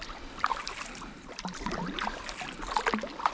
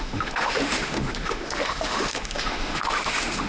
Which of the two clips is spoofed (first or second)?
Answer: second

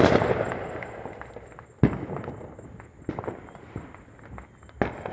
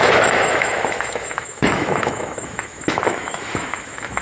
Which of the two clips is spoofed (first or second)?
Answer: second